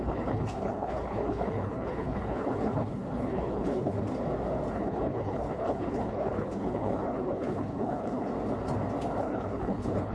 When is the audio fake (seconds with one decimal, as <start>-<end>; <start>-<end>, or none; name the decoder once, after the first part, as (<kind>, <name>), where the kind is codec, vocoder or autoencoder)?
0.0-3.9 (codec, HILCodec); 4.7-8.3; 9.2-10.1